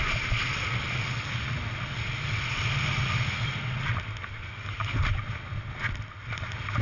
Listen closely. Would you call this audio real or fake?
real